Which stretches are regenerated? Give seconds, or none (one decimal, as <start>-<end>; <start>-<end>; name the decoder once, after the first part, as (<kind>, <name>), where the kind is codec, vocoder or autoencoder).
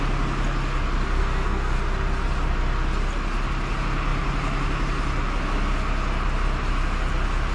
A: 1.2-1.8 (codec, SNAC)